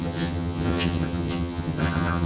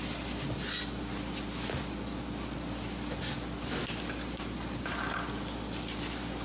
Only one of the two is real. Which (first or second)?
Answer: second